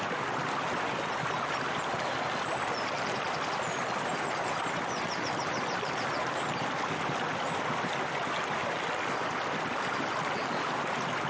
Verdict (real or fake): real